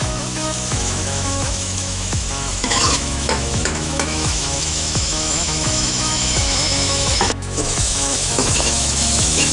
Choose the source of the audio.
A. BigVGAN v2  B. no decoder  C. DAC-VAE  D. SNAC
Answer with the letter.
C